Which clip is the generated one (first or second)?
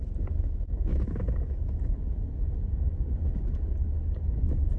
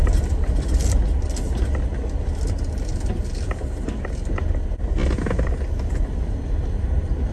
first